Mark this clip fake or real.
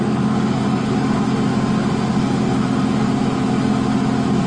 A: real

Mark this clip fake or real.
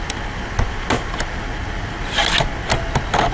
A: real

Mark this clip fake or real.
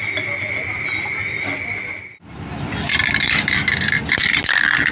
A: real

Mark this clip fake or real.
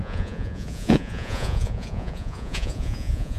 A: fake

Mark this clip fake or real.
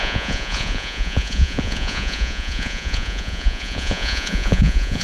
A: fake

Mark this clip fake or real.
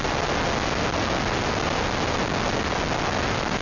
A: real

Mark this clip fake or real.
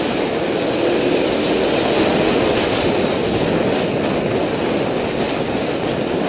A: real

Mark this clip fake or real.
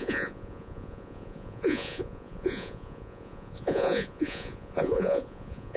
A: fake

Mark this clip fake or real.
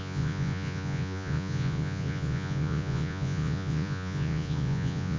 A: fake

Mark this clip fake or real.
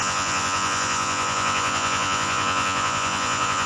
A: fake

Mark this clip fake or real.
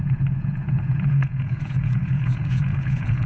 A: fake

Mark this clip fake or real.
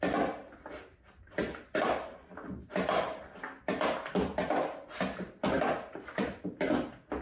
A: real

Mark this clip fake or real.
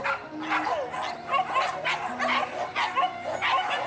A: real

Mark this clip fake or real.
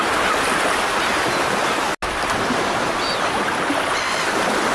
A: real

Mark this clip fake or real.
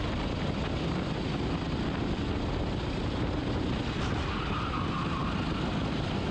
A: real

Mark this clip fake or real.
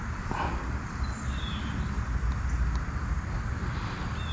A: real